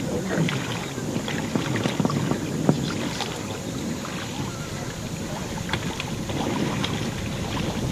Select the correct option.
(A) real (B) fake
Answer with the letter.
A